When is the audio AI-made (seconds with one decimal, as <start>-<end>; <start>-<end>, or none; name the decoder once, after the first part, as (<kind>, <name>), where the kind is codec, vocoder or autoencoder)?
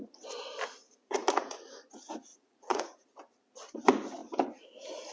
1.0-1.9 (vocoder, Vocos); 2.3-3.2